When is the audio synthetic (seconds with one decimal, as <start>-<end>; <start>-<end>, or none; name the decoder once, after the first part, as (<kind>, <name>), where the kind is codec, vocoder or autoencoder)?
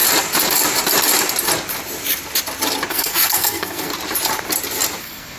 2.9-3.9 (codec, SNAC); 5.0-5.4